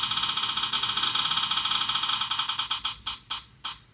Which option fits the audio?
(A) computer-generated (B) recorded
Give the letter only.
B